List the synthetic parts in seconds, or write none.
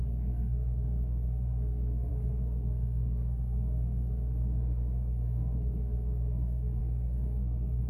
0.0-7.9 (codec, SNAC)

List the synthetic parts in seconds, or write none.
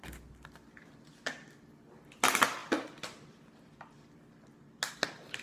none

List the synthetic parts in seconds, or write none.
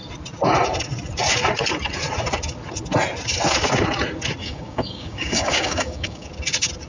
4.4-6.3 (codec, DAC)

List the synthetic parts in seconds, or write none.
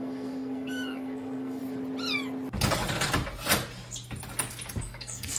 0.0-1.6 (codec, SNAC); 4.8-5.4